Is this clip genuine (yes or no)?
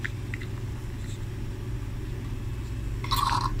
yes